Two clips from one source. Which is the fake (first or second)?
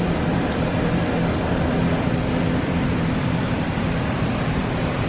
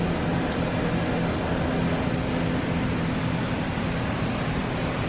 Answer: first